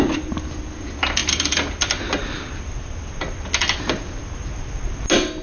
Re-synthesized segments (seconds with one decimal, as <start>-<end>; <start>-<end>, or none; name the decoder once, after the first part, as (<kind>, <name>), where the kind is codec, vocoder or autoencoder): none